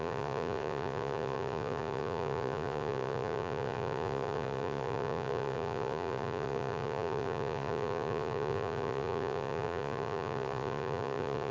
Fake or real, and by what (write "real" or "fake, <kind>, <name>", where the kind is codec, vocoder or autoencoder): fake, vocoder, Vocos